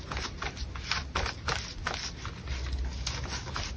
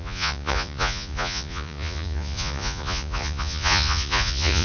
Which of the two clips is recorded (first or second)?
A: first